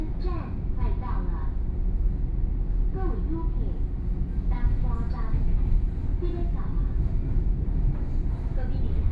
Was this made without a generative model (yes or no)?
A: yes